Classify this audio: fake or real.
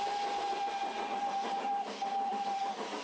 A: fake